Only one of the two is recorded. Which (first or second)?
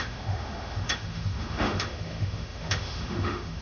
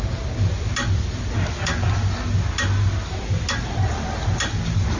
second